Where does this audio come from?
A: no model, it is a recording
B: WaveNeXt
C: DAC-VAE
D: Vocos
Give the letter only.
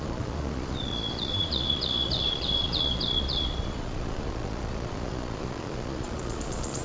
D